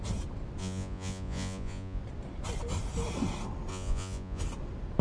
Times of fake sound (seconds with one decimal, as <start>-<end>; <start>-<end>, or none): 0.6-2.0; 3.7-4.4